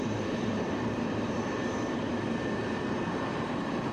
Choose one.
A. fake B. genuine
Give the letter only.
A